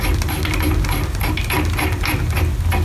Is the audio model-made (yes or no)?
no